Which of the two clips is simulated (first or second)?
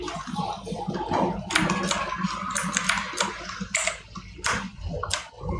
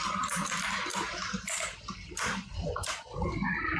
second